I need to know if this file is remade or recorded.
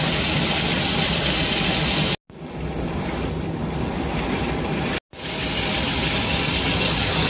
recorded